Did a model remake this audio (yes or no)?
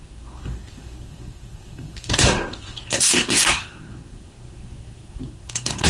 yes